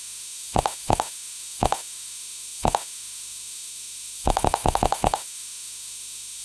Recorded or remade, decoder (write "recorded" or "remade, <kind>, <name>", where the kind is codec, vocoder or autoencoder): remade, autoencoder, DAC-VAE